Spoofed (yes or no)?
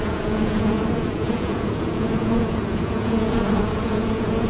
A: yes